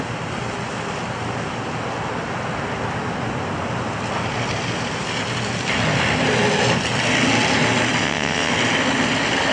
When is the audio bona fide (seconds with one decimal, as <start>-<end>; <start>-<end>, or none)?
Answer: 0.0-8.0; 8.5-9.5